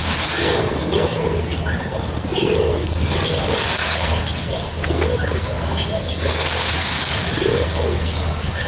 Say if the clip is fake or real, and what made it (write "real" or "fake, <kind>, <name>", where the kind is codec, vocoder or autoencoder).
fake, codec, SNAC